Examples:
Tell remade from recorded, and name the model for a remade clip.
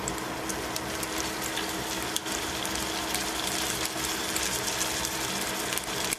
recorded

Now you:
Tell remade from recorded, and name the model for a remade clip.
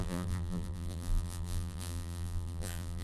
remade, vocoder, BigVGAN v2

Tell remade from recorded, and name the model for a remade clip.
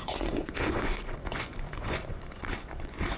remade, vocoder, Vocos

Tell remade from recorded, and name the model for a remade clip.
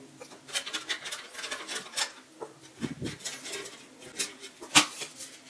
recorded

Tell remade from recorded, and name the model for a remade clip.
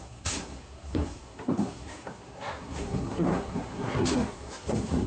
remade, codec, SNAC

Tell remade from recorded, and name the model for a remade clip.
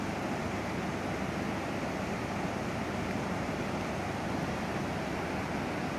recorded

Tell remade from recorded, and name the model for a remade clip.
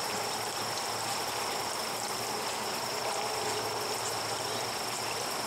recorded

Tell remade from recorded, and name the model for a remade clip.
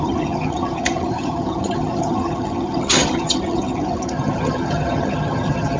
remade, vocoder, HiFi-GAN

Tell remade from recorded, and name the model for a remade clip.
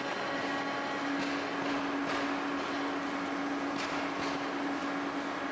recorded